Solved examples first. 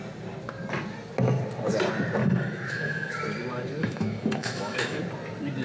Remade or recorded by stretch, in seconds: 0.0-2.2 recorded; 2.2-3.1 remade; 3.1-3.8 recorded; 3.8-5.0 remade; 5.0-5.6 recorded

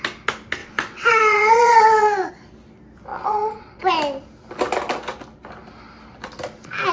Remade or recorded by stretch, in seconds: 0.0-0.6 recorded; 0.6-2.3 remade; 2.3-3.1 recorded; 3.1-3.9 remade; 3.9-6.9 recorded

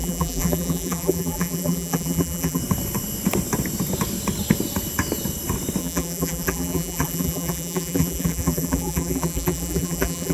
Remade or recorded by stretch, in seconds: 0.0-2.6 remade; 2.6-5.8 recorded; 5.8-10.3 remade

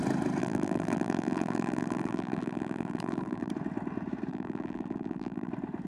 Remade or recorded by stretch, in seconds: 0.0-0.4 recorded; 0.4-3.5 remade; 3.5-4.3 recorded; 4.3-5.5 remade; 5.5-5.9 recorded

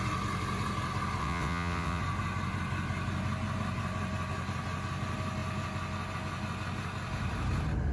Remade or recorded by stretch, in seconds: 0.0-1.2 recorded; 1.2-2.0 remade; 2.0-7.9 recorded

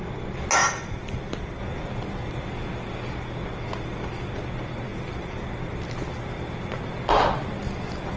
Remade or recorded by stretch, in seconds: 0.0-0.6 recorded; 0.6-1.6 remade; 1.6-3.7 recorded; 3.7-4.4 remade; 4.4-4.9 recorded; 4.9-5.5 remade; 5.5-8.2 recorded

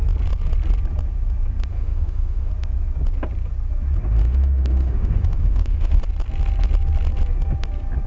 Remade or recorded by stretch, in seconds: 0.0-1.7 recorded; 1.7-2.5 remade; 2.5-4.2 recorded; 4.2-6.0 remade; 6.0-8.1 recorded

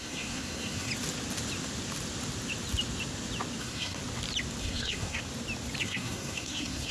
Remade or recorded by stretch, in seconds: 0.0-0.9 remade; 0.9-3.6 recorded; 3.6-4.0 remade; 4.0-4.6 recorded; 4.6-5.2 remade; 5.2-5.8 recorded; 5.8-6.9 remade